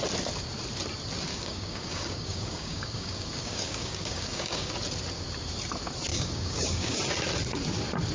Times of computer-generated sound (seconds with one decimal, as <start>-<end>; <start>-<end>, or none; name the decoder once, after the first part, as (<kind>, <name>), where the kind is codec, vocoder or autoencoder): 1.3-4.7 (codec, DAC); 6.1-7.0